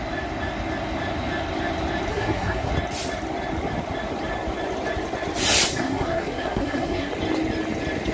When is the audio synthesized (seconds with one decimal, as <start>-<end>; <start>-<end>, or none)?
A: 2.1-2.7; 5.7-7.1